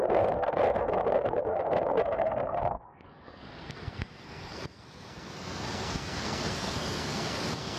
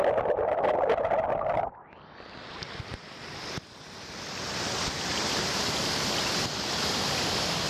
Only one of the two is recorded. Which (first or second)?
second